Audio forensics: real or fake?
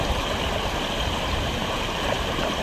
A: real